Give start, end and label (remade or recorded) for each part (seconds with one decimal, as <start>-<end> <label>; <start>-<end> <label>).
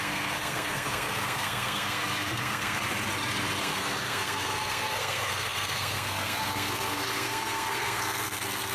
0.0-2.8 remade; 2.8-3.6 recorded; 3.6-8.7 remade